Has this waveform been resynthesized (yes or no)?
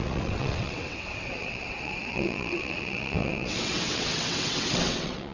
yes